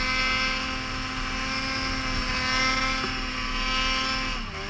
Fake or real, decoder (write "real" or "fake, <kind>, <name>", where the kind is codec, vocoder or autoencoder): real